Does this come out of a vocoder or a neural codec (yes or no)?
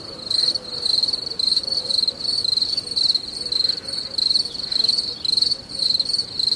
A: no